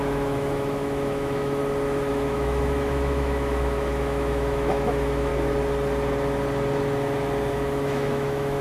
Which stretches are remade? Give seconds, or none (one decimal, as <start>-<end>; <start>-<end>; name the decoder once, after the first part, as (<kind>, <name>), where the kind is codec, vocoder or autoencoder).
0.0-1.6 (autoencoder, DAC-VAE); 2.1-5.3; 7.5-8.6